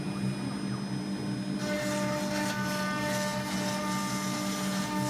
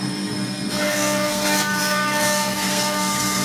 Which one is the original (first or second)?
first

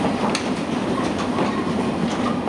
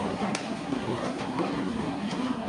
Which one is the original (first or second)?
first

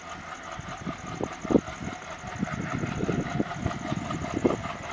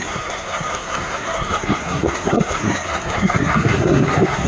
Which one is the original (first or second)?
first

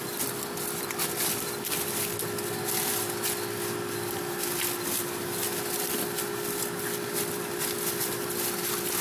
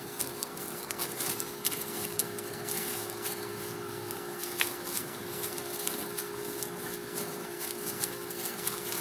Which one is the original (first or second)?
first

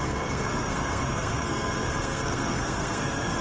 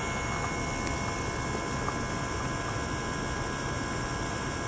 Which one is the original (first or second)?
second